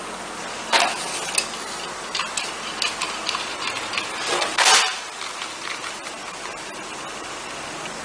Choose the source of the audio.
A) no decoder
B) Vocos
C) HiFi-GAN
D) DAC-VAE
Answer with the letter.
A